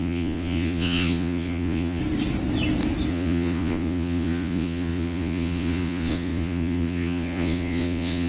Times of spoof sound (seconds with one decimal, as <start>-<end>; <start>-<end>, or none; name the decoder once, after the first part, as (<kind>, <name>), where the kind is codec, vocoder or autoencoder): 0.0-2.0 (vocoder, Vocos); 3.1-8.3